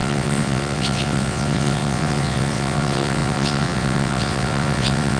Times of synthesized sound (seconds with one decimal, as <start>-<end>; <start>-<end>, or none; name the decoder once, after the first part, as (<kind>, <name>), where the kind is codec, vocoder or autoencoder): 0.0-5.2 (vocoder, WaveNeXt)